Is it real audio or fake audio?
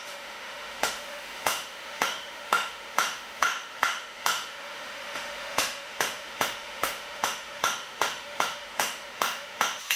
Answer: fake